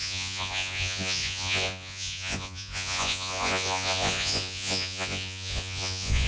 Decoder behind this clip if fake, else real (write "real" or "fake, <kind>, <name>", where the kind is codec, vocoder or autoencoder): fake, vocoder, Vocos